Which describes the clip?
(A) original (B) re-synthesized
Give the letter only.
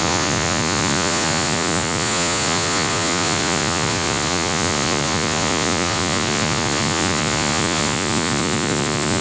B